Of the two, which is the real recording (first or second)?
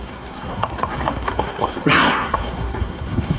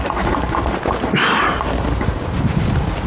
second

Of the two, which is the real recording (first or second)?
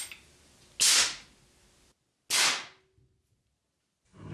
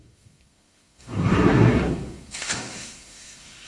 first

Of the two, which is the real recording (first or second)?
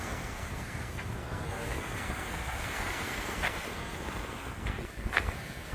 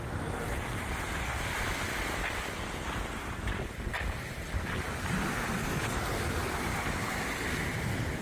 second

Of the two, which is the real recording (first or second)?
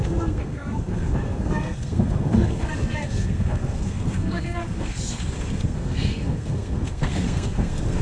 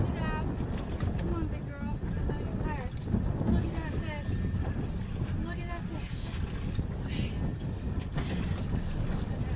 second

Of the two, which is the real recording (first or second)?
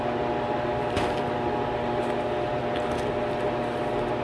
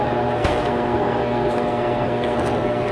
first